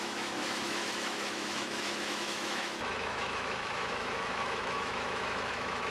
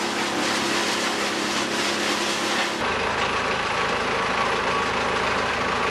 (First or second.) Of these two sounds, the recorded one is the second